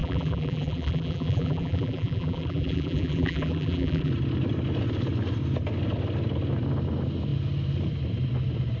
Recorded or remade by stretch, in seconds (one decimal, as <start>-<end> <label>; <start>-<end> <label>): 0.0-4.1 remade; 4.1-8.8 recorded